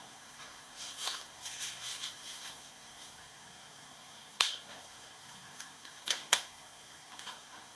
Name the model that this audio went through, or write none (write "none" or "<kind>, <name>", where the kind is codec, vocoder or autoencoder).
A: codec, SNAC